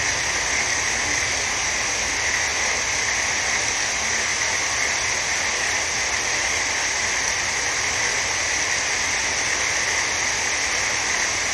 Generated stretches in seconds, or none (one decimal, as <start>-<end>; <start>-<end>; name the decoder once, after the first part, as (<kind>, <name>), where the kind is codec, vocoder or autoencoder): none